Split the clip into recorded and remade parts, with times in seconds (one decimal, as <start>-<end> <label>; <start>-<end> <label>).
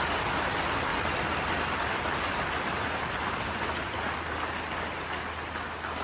0.0-6.0 recorded